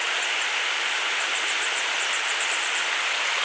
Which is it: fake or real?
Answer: real